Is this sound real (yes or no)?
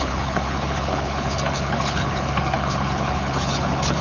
no